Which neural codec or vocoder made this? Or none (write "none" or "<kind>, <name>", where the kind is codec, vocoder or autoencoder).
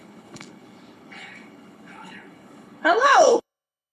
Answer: codec, HILCodec